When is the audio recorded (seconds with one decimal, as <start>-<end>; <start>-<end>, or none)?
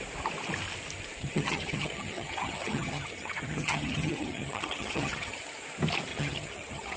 0.0-1.2; 5.4-6.1